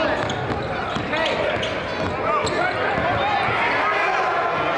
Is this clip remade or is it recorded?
recorded